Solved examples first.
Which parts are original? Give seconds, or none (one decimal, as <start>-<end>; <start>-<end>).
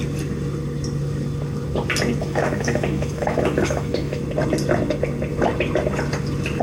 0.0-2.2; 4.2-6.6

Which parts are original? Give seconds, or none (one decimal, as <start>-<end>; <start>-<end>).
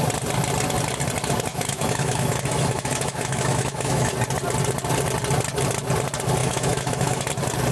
0.0-1.5; 4.1-6.4; 7.3-7.7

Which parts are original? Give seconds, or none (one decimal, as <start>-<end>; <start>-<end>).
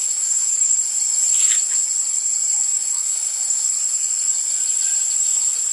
0.8-2.7; 3.6-5.7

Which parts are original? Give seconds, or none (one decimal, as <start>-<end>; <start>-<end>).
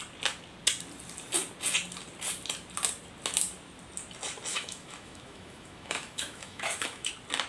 0.0-4.5; 7.1-7.5